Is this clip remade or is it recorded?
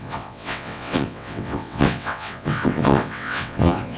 remade